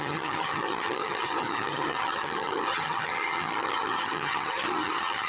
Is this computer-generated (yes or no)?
yes